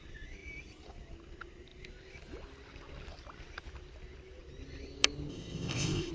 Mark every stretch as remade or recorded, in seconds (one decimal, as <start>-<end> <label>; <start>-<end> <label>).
0.0-5.3 recorded; 5.3-6.1 remade